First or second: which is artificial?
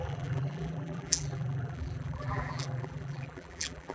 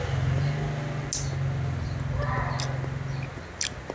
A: first